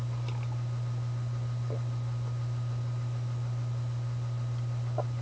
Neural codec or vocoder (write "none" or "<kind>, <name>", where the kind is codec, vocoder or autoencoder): none